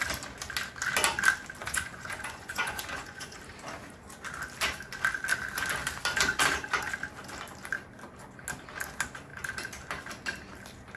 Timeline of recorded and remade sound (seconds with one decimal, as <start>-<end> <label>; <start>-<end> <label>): 0.0-1.6 recorded; 1.6-3.4 remade; 3.4-11.0 recorded